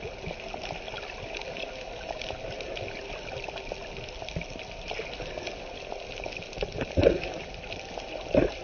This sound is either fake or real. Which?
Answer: real